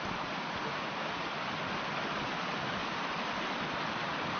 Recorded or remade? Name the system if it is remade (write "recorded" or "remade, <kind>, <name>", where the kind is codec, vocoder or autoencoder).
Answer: recorded